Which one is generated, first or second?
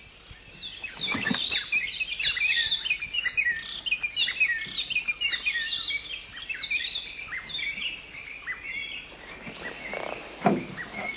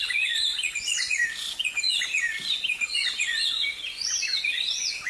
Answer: second